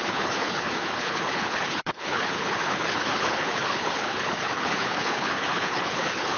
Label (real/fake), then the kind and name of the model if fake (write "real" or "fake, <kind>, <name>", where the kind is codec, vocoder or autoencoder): fake, codec, HILCodec